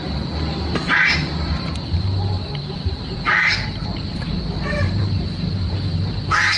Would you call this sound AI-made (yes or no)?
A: yes